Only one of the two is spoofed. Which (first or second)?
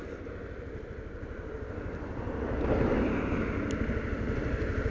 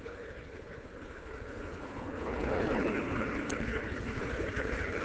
second